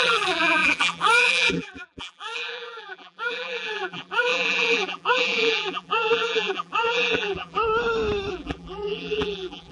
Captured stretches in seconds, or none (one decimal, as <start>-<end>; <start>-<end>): 7.6-8.3